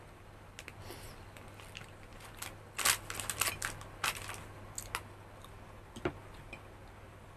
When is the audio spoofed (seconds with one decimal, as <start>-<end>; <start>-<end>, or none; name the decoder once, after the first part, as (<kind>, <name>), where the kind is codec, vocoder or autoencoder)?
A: none